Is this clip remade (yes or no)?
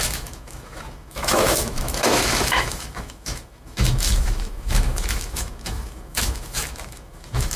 yes